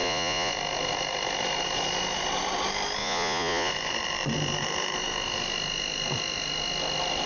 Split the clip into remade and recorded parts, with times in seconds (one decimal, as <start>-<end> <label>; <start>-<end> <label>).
0.0-0.5 remade; 0.5-3.0 recorded; 3.0-3.7 remade; 3.7-7.3 recorded